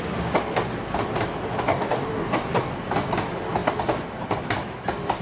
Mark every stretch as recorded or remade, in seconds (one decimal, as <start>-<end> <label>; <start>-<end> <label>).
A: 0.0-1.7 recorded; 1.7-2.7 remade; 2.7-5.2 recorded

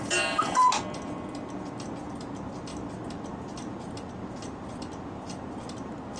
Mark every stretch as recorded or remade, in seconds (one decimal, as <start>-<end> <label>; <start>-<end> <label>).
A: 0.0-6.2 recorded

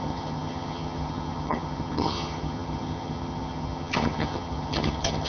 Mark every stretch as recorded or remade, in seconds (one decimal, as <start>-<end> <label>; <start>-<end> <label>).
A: 0.0-5.3 remade

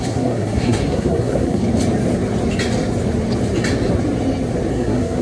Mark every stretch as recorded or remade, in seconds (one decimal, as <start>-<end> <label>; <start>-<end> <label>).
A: 0.0-1.6 remade; 1.6-4.7 recorded; 4.7-5.2 remade

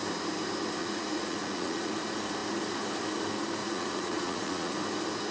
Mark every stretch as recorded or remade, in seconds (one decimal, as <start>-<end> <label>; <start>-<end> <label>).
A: 0.0-0.8 recorded; 0.8-1.9 remade; 1.9-3.6 recorded; 3.6-4.7 remade; 4.7-5.3 recorded

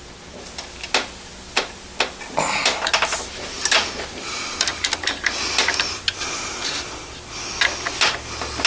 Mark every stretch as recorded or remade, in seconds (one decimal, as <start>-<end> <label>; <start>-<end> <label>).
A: 0.0-4.7 recorded; 4.7-5.4 remade; 5.4-8.7 recorded